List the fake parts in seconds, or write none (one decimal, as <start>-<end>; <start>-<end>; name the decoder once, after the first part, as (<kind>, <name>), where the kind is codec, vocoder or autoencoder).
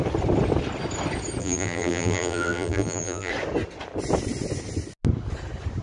1.4-3.3 (vocoder, BigVGAN v2)